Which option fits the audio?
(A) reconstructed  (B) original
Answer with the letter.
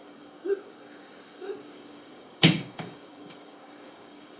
A